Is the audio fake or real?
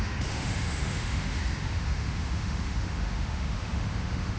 fake